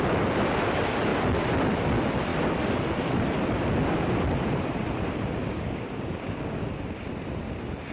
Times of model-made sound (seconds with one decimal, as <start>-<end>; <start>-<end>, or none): 5.4-6.7